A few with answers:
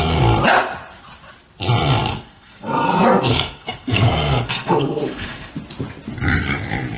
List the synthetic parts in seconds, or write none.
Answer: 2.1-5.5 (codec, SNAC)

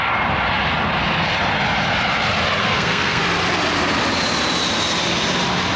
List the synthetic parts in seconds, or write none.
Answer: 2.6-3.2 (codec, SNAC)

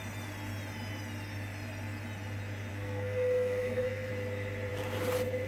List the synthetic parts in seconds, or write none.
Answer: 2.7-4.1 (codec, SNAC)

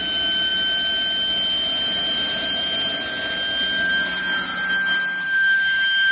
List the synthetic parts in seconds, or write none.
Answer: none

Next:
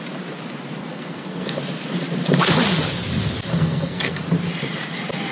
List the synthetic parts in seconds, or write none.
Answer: 0.8-1.6 (codec, SNAC); 3.5-4.2